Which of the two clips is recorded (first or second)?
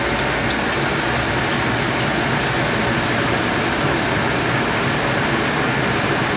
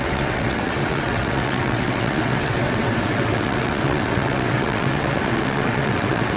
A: first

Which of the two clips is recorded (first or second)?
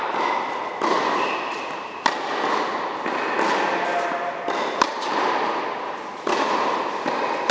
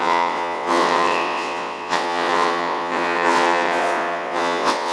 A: first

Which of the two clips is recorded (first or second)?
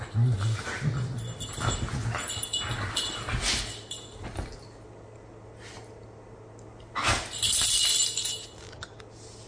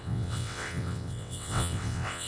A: first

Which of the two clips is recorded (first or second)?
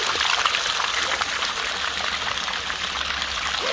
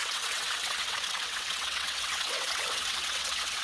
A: first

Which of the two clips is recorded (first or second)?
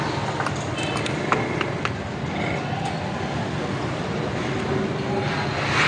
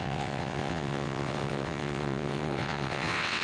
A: first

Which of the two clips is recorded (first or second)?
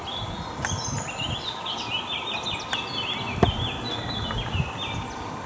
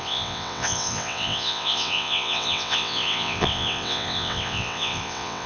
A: first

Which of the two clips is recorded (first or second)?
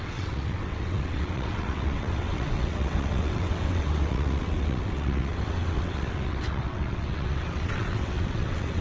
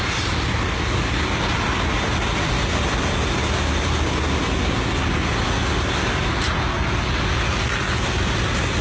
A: second